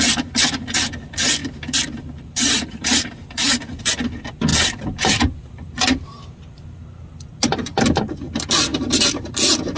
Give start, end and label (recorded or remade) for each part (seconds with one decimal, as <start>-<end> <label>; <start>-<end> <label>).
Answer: 0.0-1.4 recorded; 1.4-3.8 remade; 3.8-4.5 recorded; 4.5-5.7 remade; 5.7-8.7 recorded; 8.7-9.3 remade; 9.3-9.8 recorded